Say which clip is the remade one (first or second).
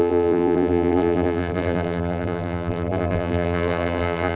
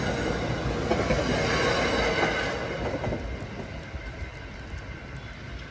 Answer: first